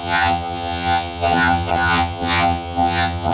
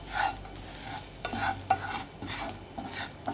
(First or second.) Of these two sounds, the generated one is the first